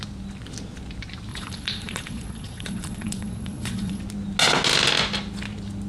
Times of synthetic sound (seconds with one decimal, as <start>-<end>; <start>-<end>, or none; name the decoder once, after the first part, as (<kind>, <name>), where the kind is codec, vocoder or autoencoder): 1.3-4.0 (vocoder, Vocos)